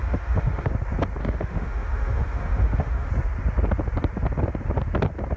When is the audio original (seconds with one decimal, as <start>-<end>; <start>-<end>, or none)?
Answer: 0.7-1.2; 3.1-5.4

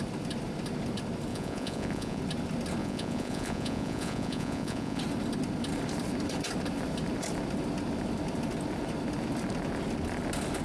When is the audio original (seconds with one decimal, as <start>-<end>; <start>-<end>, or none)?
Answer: 0.0-1.3; 2.2-2.8; 5.0-10.6